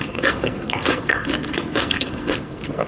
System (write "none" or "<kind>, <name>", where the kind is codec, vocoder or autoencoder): codec, SNAC